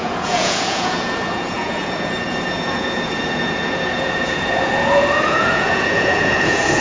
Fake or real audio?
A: fake